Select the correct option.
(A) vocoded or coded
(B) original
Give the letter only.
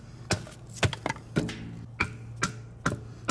B